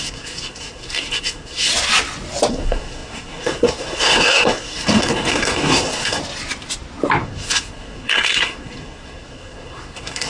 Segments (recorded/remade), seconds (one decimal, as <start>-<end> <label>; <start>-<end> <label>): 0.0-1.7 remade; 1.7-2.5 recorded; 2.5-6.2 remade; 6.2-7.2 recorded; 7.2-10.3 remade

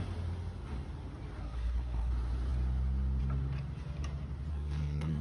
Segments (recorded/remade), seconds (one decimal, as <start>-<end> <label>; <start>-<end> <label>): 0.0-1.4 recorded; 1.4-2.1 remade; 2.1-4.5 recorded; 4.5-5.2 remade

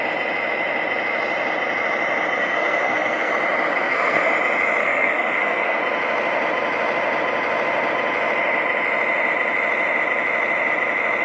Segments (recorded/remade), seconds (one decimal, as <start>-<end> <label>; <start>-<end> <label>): 0.0-2.4 recorded; 2.4-3.3 remade; 3.3-3.7 recorded; 3.7-4.3 remade; 4.3-4.8 recorded; 4.8-5.8 remade; 5.8-11.2 recorded